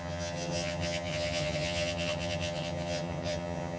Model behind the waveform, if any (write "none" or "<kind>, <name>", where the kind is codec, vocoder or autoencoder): vocoder, HiFi-GAN